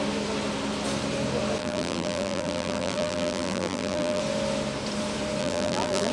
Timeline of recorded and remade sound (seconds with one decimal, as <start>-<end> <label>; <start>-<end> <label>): 0.0-1.6 recorded; 1.6-4.2 remade; 4.2-5.4 recorded; 5.4-6.1 remade